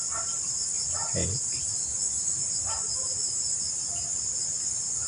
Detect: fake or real real